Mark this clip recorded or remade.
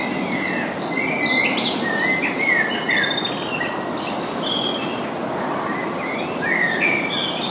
recorded